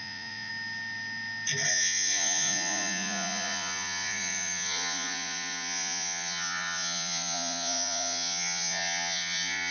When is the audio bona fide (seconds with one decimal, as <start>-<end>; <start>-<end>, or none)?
0.5-1.7